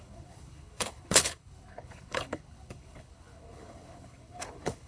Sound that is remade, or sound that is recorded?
remade